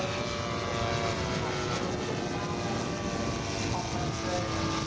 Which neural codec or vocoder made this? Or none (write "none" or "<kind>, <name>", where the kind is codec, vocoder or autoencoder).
none